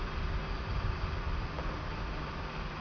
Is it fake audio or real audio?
real